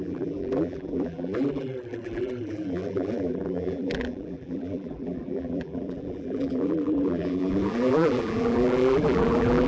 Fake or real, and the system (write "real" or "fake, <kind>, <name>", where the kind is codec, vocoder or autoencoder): fake, vocoder, BigVGAN v2